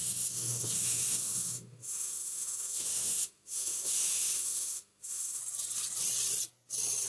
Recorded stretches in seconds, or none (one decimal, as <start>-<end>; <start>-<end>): 5.4-7.1

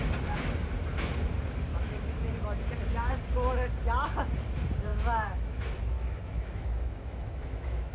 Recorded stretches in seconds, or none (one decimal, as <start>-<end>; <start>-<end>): 0.0-1.7; 2.4-4.9

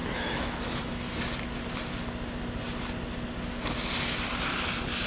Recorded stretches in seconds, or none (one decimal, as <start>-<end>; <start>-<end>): 1.2-5.1

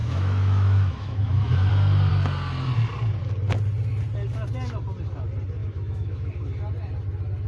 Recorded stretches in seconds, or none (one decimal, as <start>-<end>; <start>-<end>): 1.7-5.6; 6.3-7.5